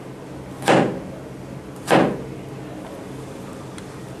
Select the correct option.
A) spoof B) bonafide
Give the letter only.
B